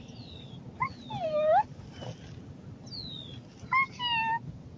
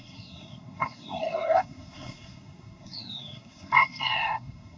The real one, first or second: first